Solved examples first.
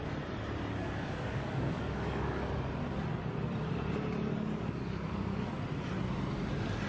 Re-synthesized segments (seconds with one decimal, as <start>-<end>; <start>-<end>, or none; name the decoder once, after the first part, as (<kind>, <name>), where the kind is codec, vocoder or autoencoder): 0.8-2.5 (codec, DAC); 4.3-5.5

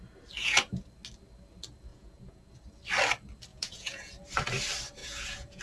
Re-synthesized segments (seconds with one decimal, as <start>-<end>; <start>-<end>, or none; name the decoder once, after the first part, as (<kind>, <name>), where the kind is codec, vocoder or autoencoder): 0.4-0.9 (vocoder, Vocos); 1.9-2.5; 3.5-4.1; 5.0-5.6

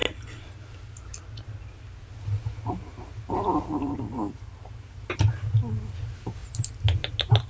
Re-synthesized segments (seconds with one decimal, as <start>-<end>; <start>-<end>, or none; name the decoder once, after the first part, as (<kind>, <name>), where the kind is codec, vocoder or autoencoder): none

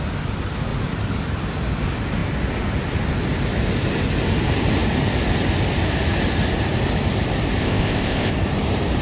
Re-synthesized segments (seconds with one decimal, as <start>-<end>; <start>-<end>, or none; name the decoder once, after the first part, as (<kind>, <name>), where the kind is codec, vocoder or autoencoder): 7.6-8.3 (codec, ZipCodec)

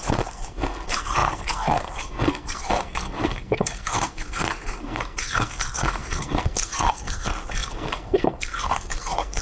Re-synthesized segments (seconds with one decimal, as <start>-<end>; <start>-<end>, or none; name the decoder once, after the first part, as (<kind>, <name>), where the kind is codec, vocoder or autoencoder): 0.0-9.4 (codec, SNAC)

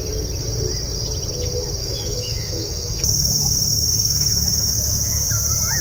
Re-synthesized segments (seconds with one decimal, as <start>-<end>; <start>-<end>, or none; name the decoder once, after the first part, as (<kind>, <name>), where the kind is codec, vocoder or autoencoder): 1.8-5.3 (autoencoder, DAC-VAE)